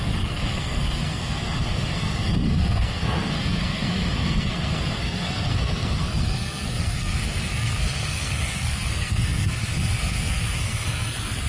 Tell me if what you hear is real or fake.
fake